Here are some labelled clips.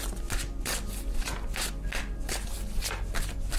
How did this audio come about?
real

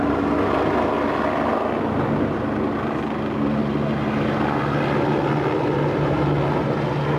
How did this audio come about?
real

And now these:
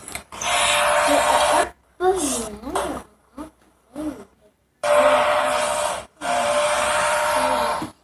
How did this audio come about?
fake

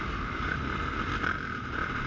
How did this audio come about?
real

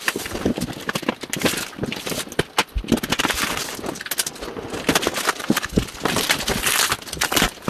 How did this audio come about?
real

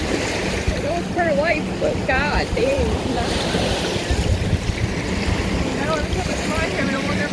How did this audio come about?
fake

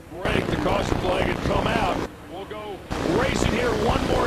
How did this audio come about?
fake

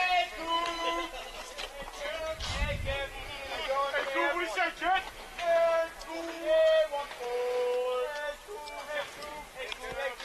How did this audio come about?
real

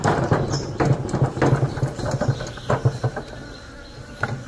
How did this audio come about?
real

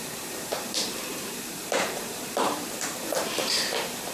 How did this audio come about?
fake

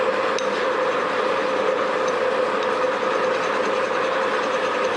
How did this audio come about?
real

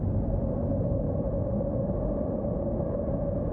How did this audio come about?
fake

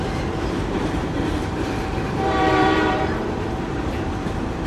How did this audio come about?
fake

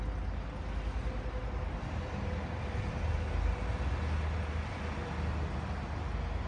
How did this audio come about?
real